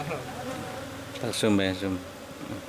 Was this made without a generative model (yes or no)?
yes